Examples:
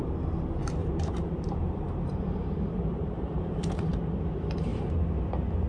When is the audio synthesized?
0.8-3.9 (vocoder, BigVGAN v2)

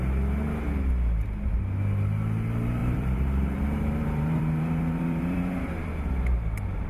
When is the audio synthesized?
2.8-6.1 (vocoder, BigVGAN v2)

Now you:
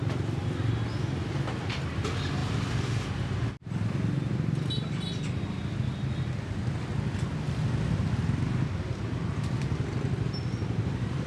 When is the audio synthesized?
2.4-3.0 (vocoder, BigVGAN v2)

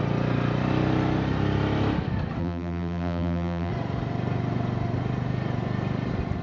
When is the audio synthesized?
2.4-3.7 (vocoder, BigVGAN v2)